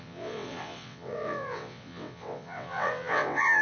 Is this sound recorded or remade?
remade